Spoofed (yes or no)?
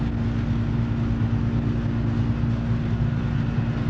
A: no